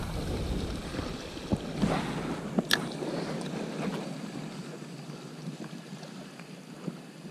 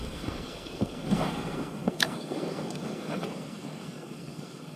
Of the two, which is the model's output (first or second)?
second